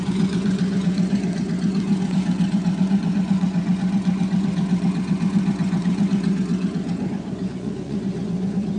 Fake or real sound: fake